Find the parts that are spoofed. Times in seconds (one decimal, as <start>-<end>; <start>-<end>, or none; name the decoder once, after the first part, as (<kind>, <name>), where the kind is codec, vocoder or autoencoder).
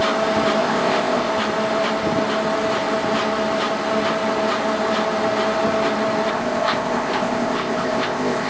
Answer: 0.6-1.3 (codec, ZipCodec); 6.3-8.5